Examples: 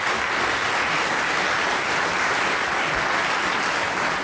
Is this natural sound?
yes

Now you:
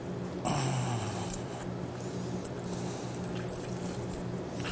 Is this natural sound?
yes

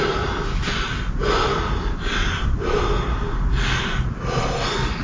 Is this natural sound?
yes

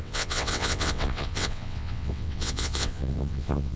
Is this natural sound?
no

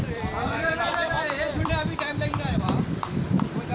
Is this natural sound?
no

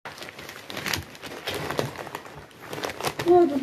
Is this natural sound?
yes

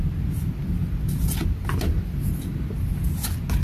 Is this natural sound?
yes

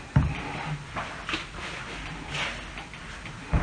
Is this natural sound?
yes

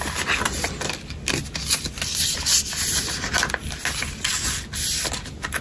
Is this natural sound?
yes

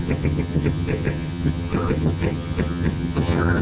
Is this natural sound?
no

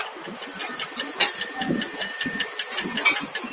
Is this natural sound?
yes